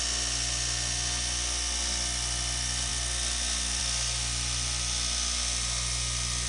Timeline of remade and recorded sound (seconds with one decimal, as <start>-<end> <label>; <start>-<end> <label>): 0.0-6.5 recorded